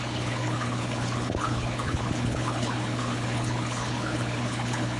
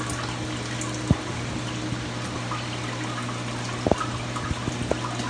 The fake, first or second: first